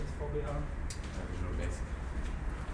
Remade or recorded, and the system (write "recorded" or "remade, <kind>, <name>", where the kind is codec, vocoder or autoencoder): recorded